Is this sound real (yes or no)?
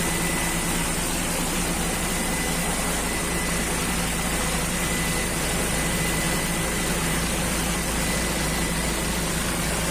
yes